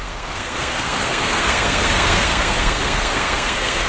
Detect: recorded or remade remade